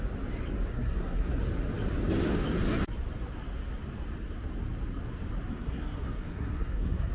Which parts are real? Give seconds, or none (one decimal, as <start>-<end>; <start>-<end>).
0.0-0.7; 1.4-5.5